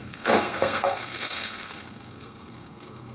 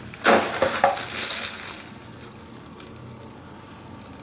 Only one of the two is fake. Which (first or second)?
first